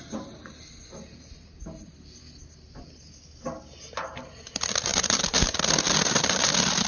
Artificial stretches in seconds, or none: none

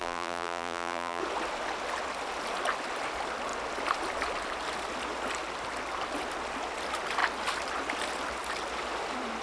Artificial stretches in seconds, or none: 0.0-1.2 (vocoder, BigVGAN v2)

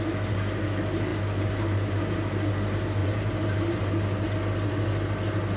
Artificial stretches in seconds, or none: 3.0-4.3 (vocoder, BigVGAN v2)

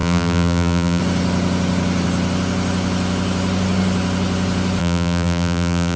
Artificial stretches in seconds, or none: 0.0-1.0 (vocoder, BigVGAN v2); 4.8-6.0